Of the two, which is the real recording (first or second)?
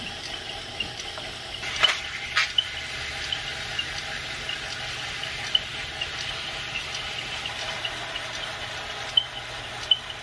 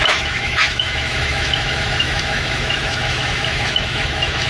first